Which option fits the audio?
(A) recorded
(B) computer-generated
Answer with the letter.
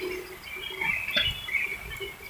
A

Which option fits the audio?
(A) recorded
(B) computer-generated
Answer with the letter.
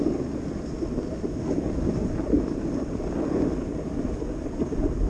A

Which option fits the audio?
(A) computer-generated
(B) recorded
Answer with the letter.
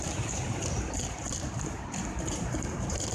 A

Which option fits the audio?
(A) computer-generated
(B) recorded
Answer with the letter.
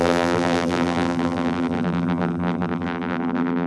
A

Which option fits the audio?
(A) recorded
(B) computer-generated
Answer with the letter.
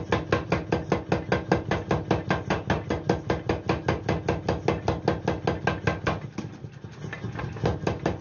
A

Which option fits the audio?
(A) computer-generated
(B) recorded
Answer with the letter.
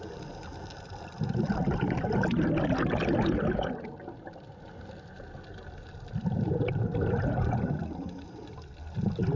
B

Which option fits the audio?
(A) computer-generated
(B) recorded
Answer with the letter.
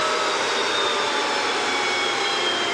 A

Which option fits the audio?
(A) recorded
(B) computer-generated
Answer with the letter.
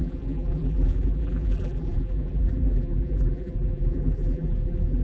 B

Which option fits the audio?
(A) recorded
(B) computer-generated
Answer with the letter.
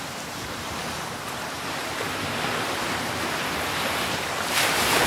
B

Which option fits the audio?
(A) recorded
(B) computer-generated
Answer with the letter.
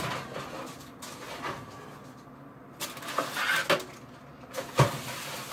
A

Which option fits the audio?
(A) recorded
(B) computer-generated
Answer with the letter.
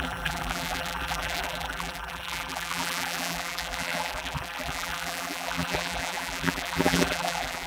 B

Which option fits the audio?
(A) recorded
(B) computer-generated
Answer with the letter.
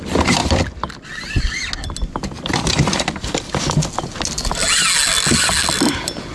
A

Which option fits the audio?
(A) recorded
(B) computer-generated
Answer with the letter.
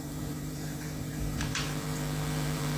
B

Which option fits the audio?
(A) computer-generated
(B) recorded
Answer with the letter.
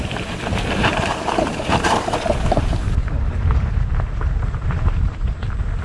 A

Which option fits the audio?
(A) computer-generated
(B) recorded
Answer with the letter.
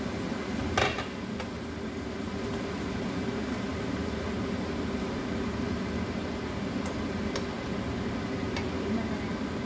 B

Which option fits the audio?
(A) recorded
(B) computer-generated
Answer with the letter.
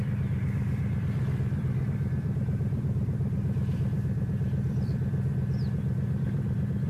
B